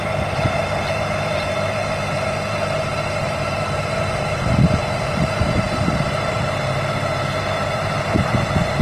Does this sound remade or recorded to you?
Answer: remade